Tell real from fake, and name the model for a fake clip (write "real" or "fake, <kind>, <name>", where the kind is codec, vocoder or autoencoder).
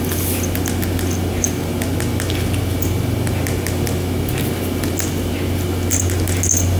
real